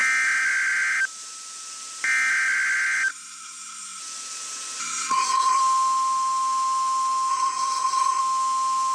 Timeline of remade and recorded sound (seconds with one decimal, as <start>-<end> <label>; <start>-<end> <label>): 0.0-3.1 recorded; 3.1-4.0 remade; 4.0-4.8 recorded; 4.8-5.6 remade; 5.6-7.3 recorded; 7.3-8.2 remade; 8.2-8.9 recorded